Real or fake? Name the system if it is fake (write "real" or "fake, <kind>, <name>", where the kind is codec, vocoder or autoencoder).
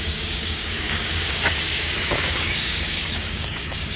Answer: fake, codec, DAC